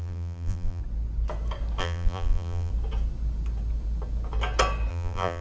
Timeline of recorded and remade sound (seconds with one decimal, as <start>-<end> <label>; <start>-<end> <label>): 0.0-0.8 remade; 0.8-1.8 recorded; 1.8-2.7 remade; 2.7-4.9 recorded; 4.9-5.4 remade